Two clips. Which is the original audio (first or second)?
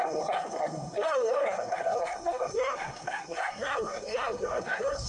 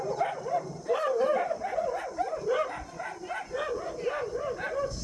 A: second